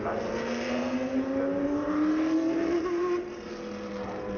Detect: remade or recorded recorded